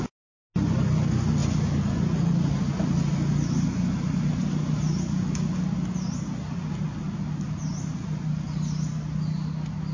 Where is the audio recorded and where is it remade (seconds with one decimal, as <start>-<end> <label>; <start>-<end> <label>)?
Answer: 0.0-9.9 recorded